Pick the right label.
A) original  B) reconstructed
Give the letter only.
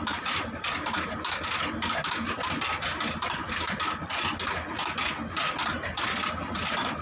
A